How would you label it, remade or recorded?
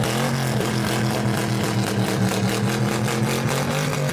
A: recorded